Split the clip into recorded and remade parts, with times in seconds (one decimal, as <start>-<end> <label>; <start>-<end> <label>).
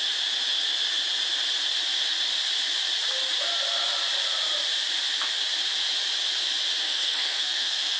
0.0-6.8 recorded; 6.8-8.0 remade